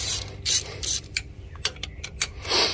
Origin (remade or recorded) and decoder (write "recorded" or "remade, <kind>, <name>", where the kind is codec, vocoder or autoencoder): remade, vocoder, BigVGAN v2